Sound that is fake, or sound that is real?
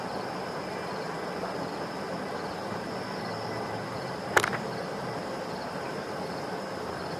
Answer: fake